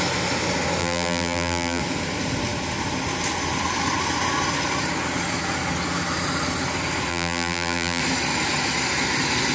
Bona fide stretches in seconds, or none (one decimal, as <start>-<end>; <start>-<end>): 0.0-0.8; 1.8-7.1; 8.0-9.5